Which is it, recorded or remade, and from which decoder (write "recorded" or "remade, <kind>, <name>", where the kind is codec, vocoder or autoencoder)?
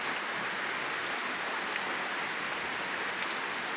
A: recorded